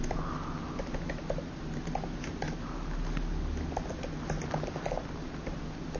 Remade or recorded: recorded